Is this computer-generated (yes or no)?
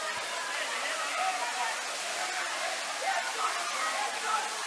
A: no